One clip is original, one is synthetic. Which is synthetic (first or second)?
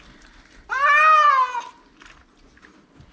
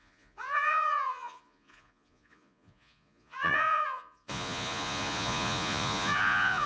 second